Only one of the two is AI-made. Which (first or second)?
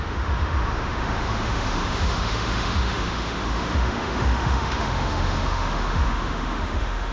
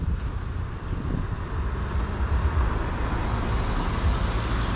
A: first